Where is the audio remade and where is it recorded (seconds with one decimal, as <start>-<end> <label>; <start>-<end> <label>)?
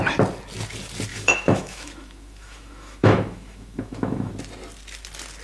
0.0-1.1 recorded; 1.1-4.3 remade; 4.3-5.4 recorded